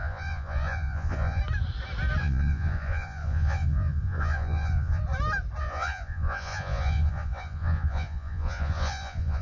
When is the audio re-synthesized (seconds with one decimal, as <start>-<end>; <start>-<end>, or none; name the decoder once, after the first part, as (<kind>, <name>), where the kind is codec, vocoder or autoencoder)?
0.0-1.4 (vocoder, Vocos); 2.2-5.0; 5.6-9.4